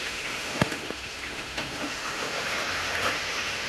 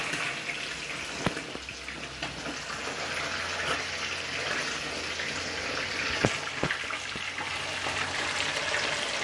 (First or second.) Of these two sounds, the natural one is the second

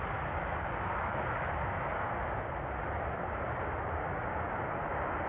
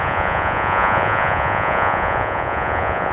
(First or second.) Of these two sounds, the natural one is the first